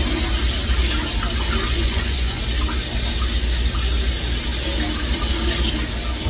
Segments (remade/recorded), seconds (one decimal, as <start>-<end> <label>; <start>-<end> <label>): 0.0-1.7 recorded; 1.7-2.4 remade; 2.4-6.3 recorded